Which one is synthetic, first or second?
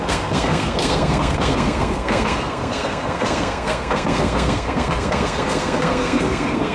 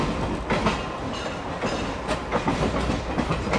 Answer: first